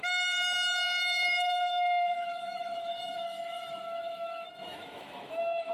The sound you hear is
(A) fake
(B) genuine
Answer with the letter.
A